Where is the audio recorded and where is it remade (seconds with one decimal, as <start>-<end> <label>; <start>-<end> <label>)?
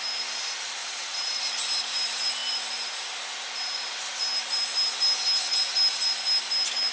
0.0-0.8 recorded; 0.8-1.4 remade; 1.4-6.9 recorded